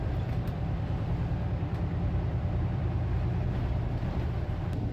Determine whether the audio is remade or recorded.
remade